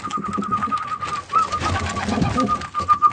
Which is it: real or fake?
real